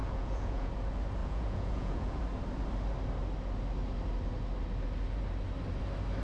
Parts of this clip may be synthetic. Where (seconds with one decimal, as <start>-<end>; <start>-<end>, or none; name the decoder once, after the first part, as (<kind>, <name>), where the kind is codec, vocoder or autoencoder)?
0.0-0.7 (vocoder, Vocos); 1.2-2.2